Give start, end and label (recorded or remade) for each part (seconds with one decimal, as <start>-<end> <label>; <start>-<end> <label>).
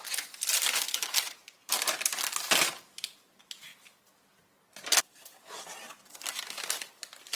0.0-7.4 recorded